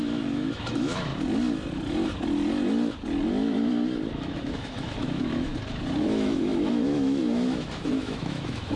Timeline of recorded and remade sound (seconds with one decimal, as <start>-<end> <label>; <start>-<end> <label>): 0.0-1.1 remade; 1.1-4.1 recorded; 4.1-5.5 remade; 5.5-6.0 recorded; 6.0-8.8 remade